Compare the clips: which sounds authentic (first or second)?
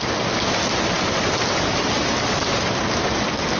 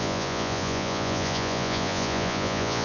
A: first